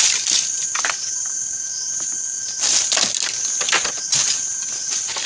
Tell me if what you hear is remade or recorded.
recorded